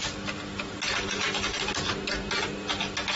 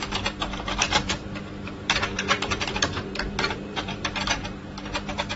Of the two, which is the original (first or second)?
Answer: first